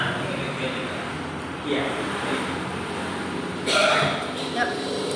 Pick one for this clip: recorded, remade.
recorded